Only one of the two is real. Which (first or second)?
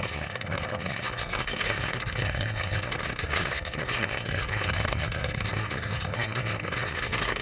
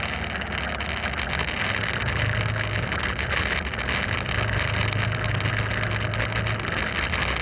second